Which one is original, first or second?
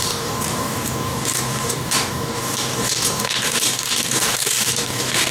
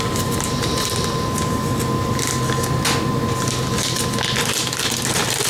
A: second